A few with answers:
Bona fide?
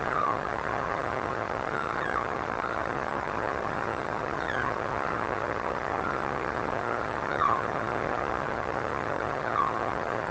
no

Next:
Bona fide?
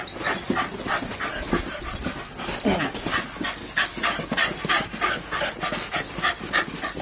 yes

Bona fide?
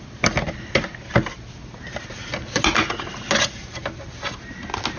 yes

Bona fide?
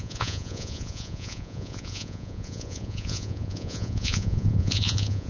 no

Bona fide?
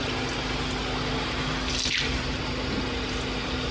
yes